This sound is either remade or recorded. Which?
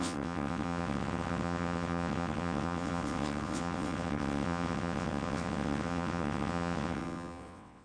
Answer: remade